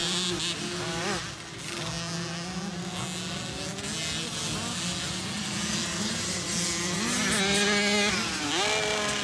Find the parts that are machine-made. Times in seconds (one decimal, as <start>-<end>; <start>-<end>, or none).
none

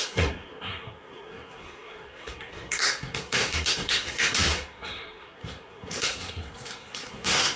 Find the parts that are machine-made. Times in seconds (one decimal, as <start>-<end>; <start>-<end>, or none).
0.0-7.6

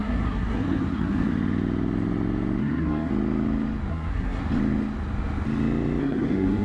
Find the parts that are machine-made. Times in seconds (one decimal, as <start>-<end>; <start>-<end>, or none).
0.0-1.3; 2.6-3.1; 3.9-4.4; 6.0-6.6

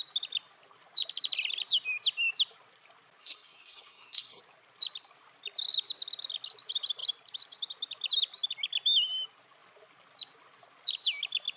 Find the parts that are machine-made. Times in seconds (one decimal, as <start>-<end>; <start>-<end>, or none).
3.2-4.4

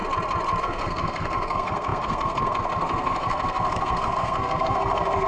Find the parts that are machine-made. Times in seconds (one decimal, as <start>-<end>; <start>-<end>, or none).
0.6-5.3

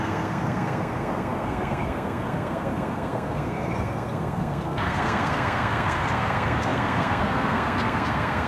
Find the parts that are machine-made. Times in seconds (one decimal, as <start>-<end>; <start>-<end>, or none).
0.0-8.5